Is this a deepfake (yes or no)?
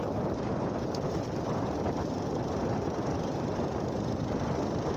no